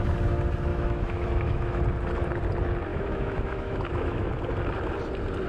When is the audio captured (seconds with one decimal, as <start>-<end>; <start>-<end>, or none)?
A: 0.0-0.7; 1.8-2.9; 4.3-5.5